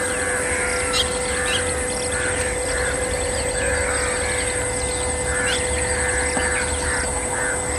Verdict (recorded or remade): recorded